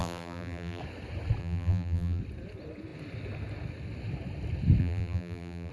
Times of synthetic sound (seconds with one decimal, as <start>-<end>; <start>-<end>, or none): 0.0-0.8; 1.4-2.2; 4.8-5.7